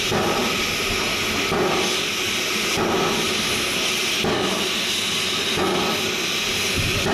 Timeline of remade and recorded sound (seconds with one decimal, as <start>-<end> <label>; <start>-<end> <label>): 0.0-7.1 recorded